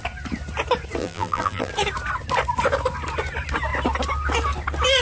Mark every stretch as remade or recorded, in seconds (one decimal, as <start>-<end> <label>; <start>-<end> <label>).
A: 0.0-1.0 recorded; 1.0-1.7 remade; 1.7-5.0 recorded